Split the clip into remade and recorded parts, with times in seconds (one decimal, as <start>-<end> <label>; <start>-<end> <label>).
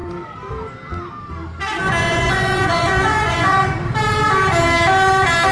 0.0-2.0 recorded; 2.0-3.7 remade; 3.7-5.5 recorded